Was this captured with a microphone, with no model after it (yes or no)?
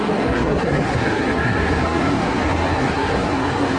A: no